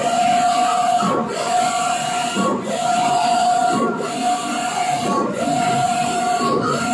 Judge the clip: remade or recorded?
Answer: remade